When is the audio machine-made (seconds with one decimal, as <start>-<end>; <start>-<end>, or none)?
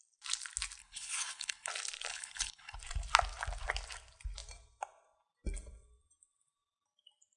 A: 0.8-1.7; 2.1-2.8